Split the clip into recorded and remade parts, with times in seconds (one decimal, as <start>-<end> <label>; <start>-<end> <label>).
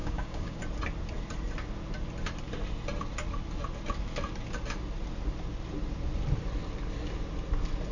0.0-0.6 remade; 0.6-7.9 recorded